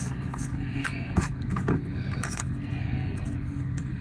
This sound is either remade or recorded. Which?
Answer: remade